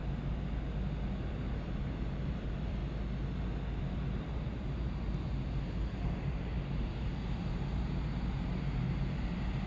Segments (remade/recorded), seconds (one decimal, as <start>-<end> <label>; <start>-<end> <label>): 0.0-1.3 recorded; 1.3-2.8 remade; 2.8-3.8 recorded; 3.8-9.7 remade